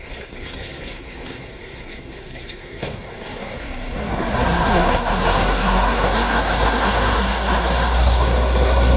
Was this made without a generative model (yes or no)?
no